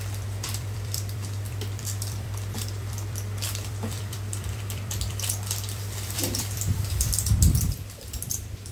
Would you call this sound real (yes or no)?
no